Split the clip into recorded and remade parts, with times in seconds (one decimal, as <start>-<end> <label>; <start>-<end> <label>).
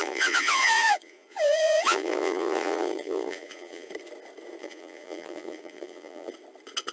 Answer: 0.0-3.9 remade; 3.9-4.6 recorded; 4.6-6.3 remade; 6.3-6.9 recorded